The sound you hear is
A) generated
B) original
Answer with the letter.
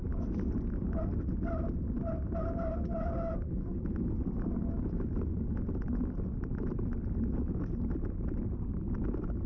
B